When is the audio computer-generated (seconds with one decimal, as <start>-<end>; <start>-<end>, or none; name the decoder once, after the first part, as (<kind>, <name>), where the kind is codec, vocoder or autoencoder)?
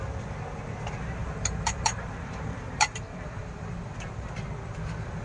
1.2-4.3 (vocoder, BigVGAN v2)